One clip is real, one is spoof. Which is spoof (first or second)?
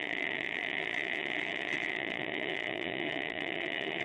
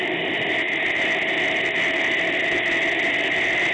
first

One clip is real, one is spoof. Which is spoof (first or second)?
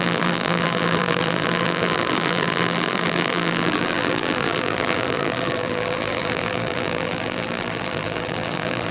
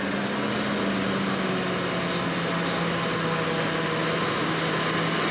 first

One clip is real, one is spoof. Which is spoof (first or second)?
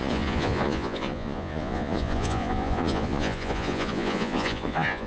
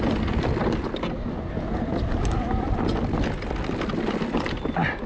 first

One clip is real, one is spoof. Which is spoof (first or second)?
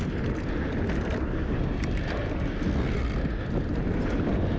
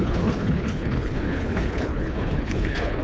second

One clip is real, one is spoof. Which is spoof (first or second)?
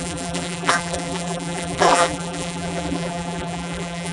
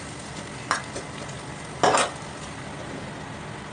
first